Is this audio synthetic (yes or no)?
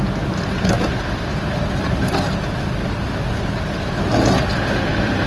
no